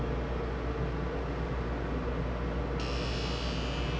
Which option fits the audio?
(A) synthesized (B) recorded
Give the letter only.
B